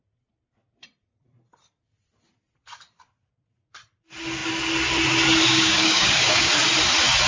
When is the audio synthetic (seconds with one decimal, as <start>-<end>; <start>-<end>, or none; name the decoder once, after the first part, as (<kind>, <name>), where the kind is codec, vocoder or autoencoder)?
5.5-6.5 (codec, DAC)